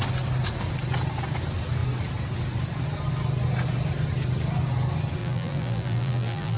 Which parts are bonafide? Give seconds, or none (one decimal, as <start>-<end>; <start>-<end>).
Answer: 0.0-5.2